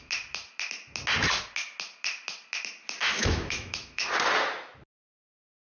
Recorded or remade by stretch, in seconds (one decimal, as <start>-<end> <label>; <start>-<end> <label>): 0.0-3.0 recorded; 3.0-4.1 remade; 4.1-5.8 recorded